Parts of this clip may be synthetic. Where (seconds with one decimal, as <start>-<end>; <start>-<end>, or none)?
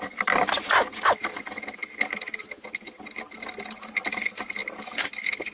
none